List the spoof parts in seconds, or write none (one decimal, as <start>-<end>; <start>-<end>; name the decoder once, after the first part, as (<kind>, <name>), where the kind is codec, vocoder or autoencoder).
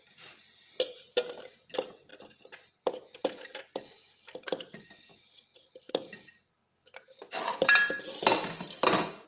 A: none